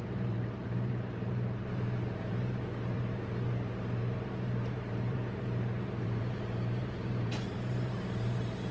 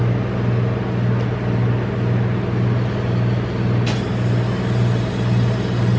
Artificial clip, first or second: first